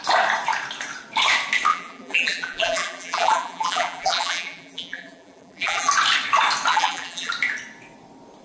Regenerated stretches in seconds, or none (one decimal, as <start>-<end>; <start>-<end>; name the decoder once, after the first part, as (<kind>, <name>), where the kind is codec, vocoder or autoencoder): 1.7-5.9 (vocoder, BigVGAN v2); 6.7-7.3